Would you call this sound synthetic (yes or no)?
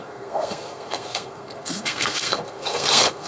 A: yes